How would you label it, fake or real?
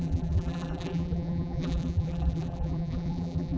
fake